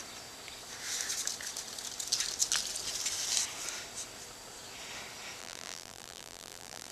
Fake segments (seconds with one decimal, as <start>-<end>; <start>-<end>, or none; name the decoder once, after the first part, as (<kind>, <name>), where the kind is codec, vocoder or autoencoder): 5.4-6.9 (vocoder, BigVGAN v2)